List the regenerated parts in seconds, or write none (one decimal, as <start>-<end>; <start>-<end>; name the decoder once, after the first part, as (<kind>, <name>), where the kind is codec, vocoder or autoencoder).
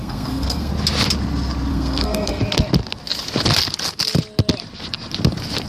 0.0-0.7 (codec, SNAC); 1.7-2.4